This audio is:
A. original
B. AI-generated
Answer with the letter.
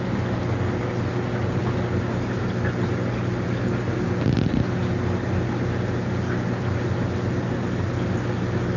A